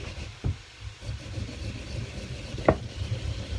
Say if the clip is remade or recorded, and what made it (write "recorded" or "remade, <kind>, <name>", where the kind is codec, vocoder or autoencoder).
recorded